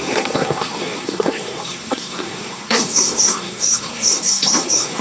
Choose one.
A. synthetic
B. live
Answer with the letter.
A